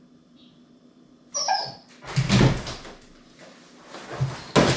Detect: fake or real real